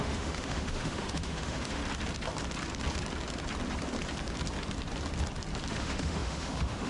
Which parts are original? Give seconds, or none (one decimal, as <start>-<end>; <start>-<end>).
1.8-5.7